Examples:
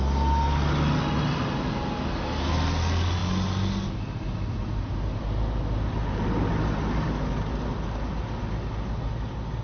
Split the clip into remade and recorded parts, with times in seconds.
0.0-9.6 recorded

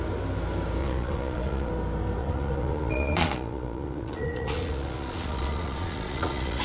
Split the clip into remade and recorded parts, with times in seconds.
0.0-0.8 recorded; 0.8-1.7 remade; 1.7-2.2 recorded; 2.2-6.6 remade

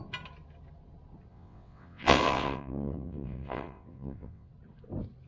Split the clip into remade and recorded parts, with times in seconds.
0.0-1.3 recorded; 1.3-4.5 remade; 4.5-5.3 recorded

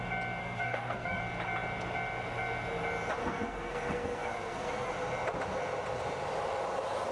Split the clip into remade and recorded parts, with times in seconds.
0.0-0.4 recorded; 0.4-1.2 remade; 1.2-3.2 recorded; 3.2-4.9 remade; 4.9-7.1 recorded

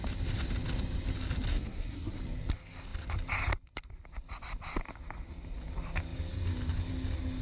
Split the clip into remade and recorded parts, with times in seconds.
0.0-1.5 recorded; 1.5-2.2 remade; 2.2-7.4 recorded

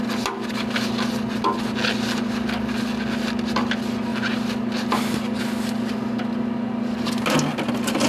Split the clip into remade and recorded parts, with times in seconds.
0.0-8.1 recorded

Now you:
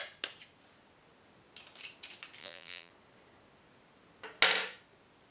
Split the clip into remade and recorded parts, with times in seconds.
0.0-2.4 recorded; 2.4-2.9 remade; 2.9-5.3 recorded